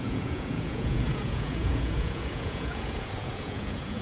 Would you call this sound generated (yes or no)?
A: yes